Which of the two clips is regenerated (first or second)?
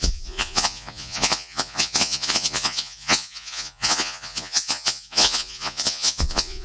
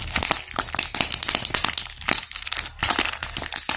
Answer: first